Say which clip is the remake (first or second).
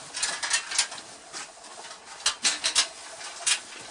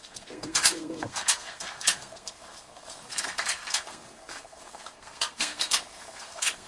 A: second